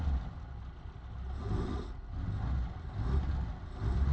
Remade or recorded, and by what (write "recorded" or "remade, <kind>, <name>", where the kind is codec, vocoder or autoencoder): recorded